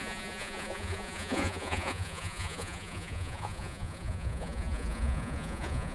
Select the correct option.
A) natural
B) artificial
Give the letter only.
B